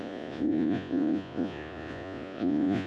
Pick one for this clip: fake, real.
fake